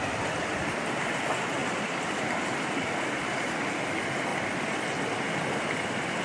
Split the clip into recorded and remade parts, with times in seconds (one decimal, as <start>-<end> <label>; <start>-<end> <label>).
0.0-6.2 recorded